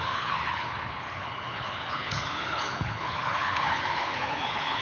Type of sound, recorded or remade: remade